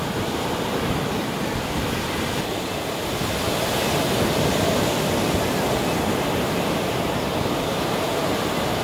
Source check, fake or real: real